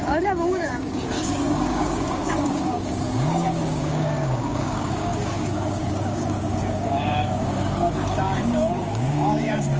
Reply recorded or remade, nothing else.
remade